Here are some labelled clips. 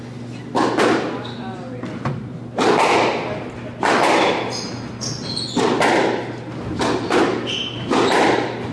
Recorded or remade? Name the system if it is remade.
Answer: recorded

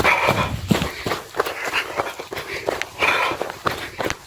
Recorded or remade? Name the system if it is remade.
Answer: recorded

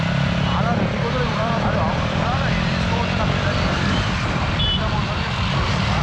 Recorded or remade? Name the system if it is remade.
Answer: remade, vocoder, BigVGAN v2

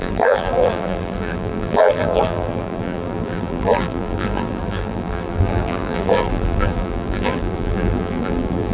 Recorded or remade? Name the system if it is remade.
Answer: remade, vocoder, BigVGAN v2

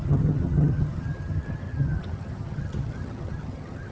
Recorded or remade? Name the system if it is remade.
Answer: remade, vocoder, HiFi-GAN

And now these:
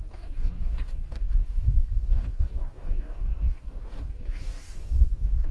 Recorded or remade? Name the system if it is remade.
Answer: remade, codec, DAC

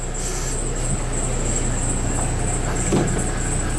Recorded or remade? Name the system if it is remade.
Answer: recorded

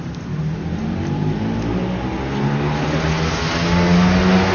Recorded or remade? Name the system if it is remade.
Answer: recorded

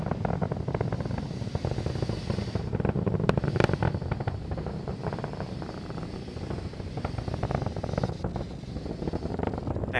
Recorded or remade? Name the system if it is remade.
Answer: recorded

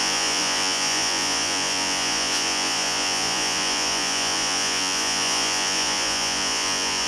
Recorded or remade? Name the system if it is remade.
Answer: remade, vocoder, Vocos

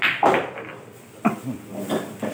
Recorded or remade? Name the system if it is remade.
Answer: recorded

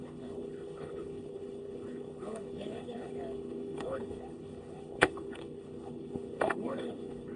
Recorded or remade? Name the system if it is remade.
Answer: remade, codec, HILCodec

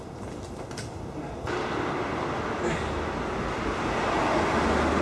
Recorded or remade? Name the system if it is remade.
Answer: recorded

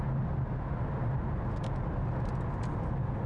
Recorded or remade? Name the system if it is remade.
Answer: recorded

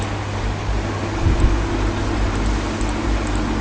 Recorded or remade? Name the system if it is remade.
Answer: recorded